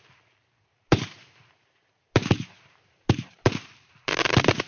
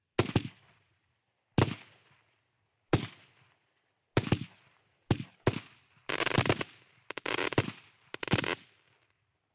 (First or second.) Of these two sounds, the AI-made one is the first